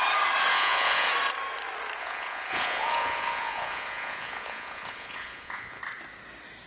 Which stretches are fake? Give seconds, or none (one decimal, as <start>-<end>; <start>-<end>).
0.5-1.1; 2.0-5.8